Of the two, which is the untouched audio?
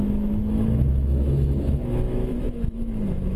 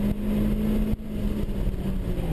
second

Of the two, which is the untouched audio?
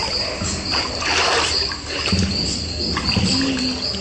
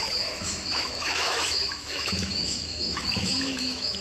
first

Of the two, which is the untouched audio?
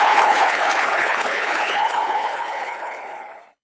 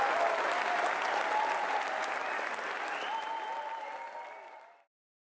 second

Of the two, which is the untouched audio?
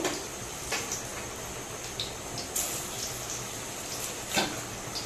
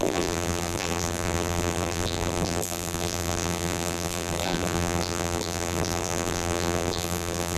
first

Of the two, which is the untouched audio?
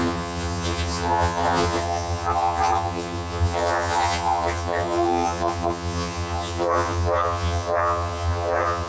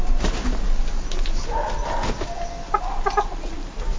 second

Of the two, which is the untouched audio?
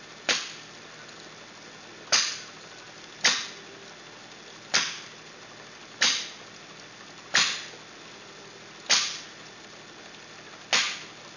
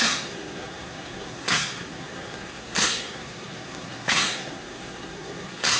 first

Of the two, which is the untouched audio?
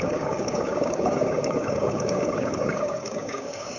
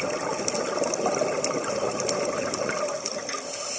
second